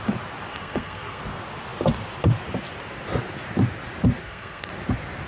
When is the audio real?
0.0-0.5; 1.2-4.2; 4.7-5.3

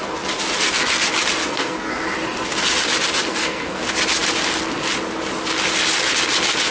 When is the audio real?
0.0-1.4; 1.9-3.3; 3.8-6.7

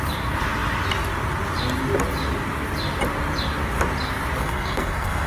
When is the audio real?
0.0-4.4

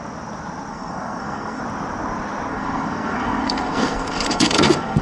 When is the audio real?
0.0-0.7; 1.6-2.5